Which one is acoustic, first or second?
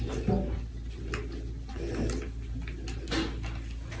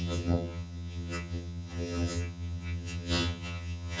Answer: first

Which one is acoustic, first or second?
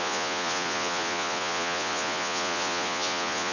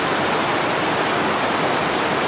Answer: second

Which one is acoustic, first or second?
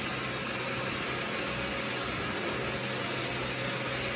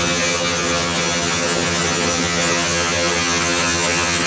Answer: first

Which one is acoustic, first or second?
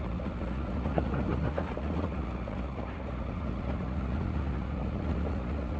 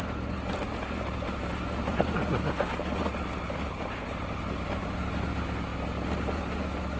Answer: second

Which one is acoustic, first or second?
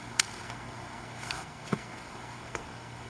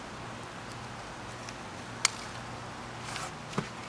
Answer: second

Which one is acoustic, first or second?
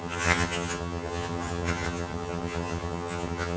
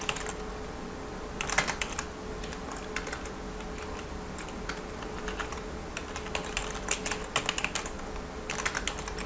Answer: second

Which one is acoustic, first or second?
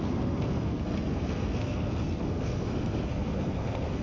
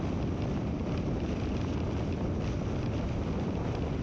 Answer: second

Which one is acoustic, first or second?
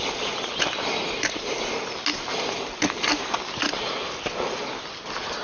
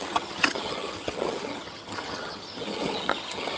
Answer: first